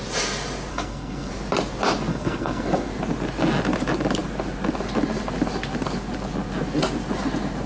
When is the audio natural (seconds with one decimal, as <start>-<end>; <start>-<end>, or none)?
0.0-0.7; 1.3-2.1; 2.9-7.7